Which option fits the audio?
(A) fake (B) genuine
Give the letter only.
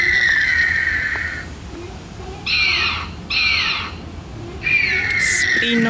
B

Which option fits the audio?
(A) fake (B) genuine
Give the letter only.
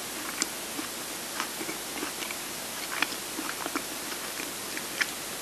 B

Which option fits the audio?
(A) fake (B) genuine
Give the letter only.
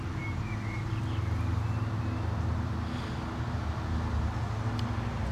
B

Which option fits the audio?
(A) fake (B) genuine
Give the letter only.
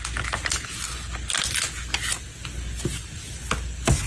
B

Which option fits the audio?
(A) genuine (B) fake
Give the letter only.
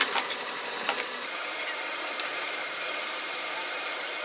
B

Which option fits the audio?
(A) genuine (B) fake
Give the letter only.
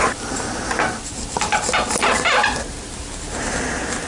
A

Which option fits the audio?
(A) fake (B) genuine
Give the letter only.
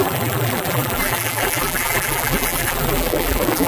A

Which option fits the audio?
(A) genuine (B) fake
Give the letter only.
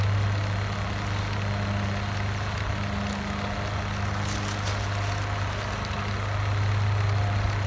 A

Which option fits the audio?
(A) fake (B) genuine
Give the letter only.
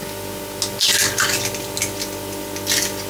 B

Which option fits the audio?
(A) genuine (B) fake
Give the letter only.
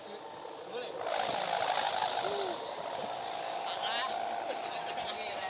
A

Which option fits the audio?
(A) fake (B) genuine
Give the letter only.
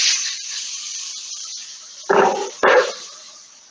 A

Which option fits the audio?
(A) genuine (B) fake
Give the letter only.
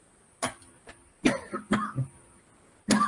A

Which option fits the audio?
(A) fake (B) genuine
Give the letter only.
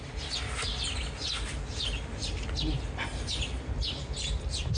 B